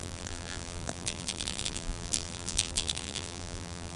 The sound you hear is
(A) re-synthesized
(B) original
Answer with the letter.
A